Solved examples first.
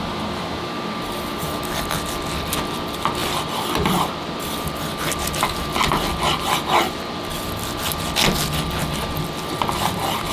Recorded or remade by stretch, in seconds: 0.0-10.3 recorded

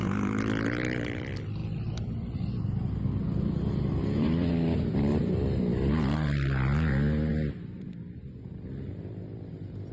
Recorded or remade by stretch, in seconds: 0.0-1.6 recorded; 1.6-4.5 remade; 4.5-5.1 recorded; 5.1-5.8 remade; 5.8-9.9 recorded

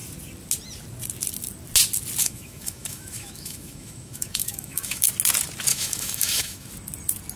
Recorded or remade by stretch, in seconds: 0.0-2.2 recorded; 2.2-5.1 remade; 5.1-5.7 recorded; 5.7-6.7 remade; 6.7-7.4 recorded

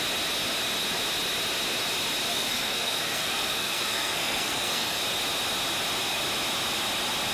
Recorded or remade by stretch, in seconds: 0.0-2.3 recorded; 2.3-5.0 remade; 5.0-7.3 recorded

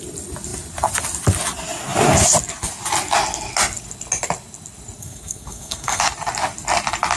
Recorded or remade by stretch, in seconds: 0.0-5.0 recorded; 5.0-6.0 remade; 6.0-7.2 recorded

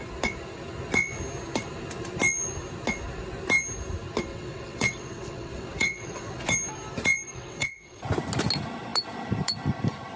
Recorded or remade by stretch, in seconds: 0.0-4.3 recorded; 4.3-6.4 remade; 6.4-7.3 recorded; 7.3-8.0 remade; 8.0-10.2 recorded

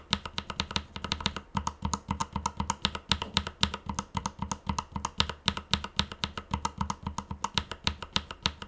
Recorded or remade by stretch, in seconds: 0.0-8.7 recorded